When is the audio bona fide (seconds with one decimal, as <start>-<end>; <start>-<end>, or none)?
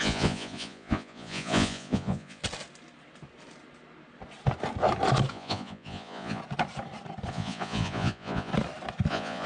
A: 2.4-5.3; 6.4-7.3; 8.5-9.1